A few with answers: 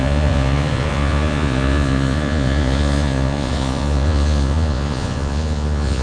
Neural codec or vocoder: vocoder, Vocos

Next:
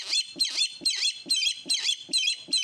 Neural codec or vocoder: none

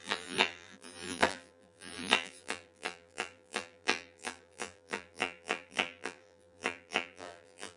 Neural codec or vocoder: vocoder, BigVGAN v2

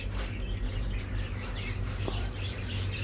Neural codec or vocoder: none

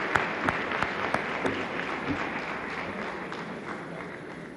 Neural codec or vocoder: none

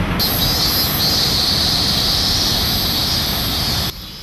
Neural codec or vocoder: none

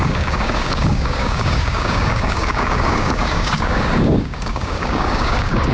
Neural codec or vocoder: codec, DAC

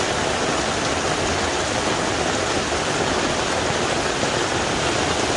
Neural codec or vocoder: none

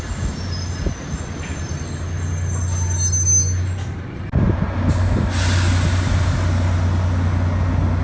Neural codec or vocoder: none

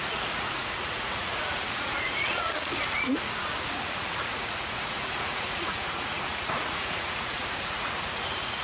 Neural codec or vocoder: vocoder, Vocos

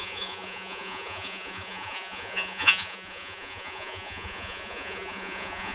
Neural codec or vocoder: vocoder, Vocos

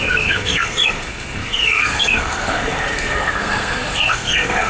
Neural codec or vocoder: codec, SNAC